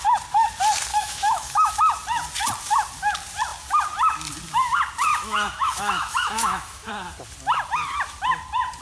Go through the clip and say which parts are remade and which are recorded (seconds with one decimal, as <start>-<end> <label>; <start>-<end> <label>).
0.0-0.9 recorded; 0.9-1.7 remade; 1.7-5.1 recorded; 5.1-6.9 remade; 6.9-8.8 recorded